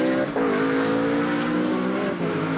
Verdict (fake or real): real